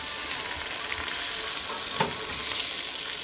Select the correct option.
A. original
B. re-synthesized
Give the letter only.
A